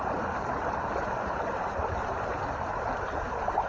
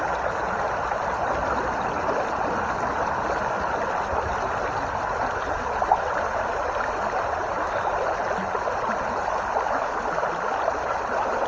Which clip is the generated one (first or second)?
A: first